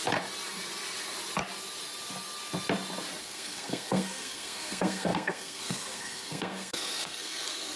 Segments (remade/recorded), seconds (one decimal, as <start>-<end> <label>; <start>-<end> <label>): 0.0-3.2 recorded; 3.2-7.8 remade